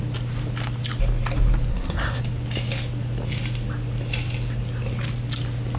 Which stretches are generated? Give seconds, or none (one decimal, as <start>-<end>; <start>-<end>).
1.7-2.2